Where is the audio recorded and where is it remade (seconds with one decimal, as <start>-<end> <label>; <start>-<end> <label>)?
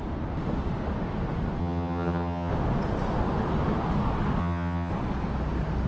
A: 0.0-1.6 recorded; 1.6-2.5 remade; 2.5-4.4 recorded; 4.4-4.9 remade; 4.9-5.9 recorded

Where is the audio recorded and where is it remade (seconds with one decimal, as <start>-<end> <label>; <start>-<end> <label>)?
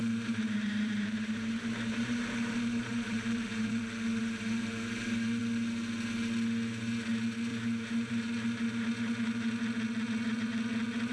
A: 0.0-3.8 remade; 3.8-4.2 recorded; 4.2-5.4 remade; 5.4-7.5 recorded; 7.5-8.1 remade; 8.1-11.1 recorded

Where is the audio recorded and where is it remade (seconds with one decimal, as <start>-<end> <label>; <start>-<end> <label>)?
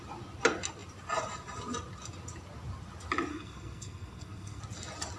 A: 0.0-3.3 recorded; 3.3-4.6 remade; 4.6-5.2 recorded